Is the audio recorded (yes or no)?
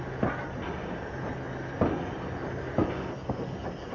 yes